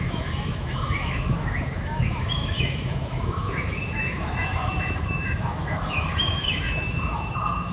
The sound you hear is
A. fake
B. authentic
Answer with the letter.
A